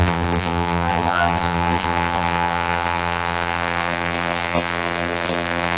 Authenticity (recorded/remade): remade